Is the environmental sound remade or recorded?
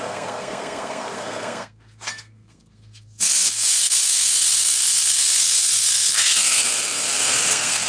remade